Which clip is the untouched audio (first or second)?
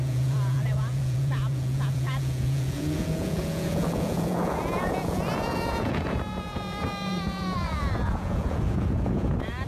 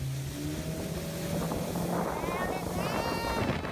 second